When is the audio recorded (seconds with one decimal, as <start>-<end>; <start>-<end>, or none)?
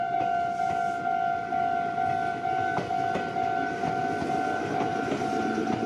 0.0-5.9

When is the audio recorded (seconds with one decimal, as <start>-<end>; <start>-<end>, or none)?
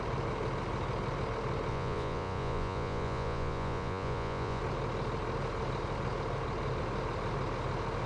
0.0-1.7; 4.6-8.1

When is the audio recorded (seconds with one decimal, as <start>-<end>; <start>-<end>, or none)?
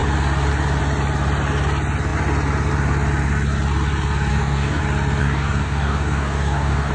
0.0-4.3; 4.8-5.2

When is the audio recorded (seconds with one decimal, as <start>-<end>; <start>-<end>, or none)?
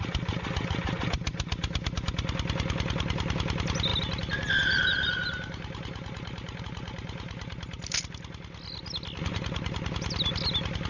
0.0-10.9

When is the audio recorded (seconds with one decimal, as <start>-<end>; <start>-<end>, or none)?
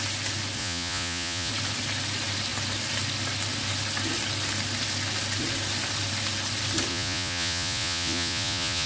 0.0-0.6; 1.5-6.9